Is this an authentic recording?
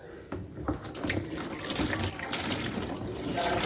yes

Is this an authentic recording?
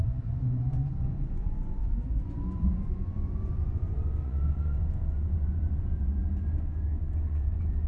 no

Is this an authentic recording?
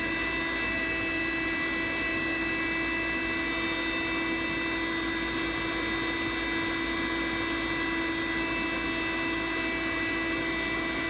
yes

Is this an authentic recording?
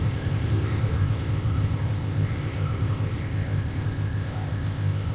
no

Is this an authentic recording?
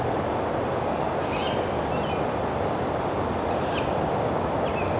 yes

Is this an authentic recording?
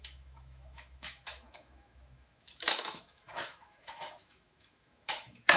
no